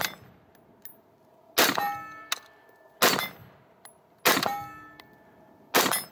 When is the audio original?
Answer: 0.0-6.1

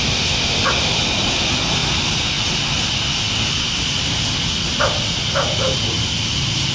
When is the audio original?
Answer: 0.0-6.7

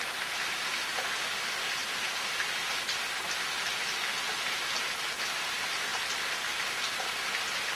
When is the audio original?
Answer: 0.0-7.8

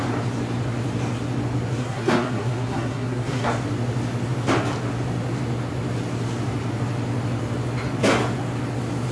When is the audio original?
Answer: 0.0-1.8; 3.5-9.1

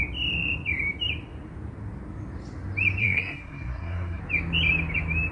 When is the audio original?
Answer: 0.0-3.0; 4.2-5.3

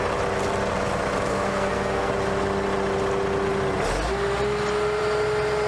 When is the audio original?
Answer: 0.0-1.3; 2.1-5.7

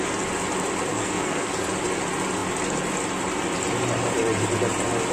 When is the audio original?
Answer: 0.0-0.9; 1.5-5.1

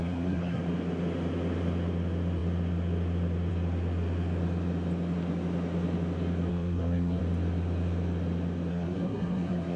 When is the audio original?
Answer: 0.6-6.5; 7.2-8.7